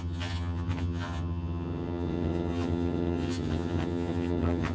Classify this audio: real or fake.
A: fake